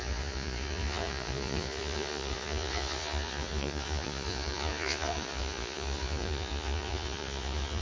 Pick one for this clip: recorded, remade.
remade